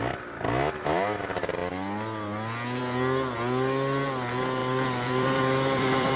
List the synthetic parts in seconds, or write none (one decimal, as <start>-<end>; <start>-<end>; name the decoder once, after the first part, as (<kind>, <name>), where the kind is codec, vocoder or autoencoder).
4.6-6.2 (vocoder, BigVGAN v2)